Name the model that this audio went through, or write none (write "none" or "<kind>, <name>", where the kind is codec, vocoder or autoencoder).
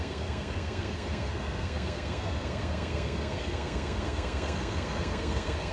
codec, SNAC